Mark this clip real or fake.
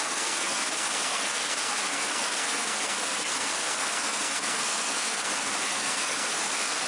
fake